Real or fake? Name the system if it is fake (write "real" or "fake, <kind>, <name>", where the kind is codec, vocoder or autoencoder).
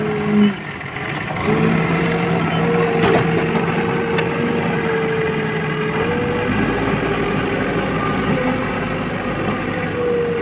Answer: real